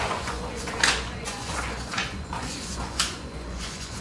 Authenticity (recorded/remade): remade